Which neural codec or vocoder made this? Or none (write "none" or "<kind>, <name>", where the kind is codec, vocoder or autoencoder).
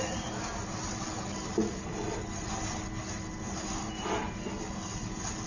none